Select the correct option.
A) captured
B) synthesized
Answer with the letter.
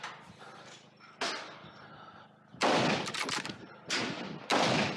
A